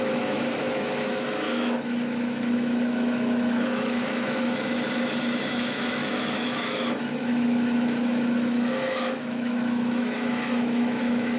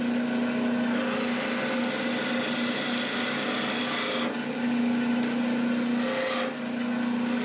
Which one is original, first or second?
second